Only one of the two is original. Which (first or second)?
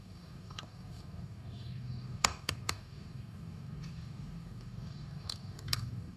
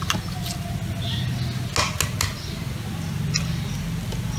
second